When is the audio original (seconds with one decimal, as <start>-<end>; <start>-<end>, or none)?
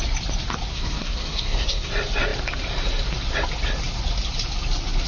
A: 0.0-0.7; 1.9-5.1